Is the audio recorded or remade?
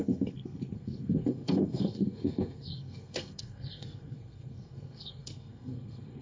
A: remade